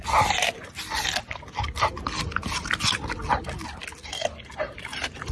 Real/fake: real